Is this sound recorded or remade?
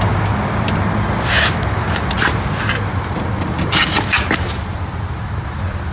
recorded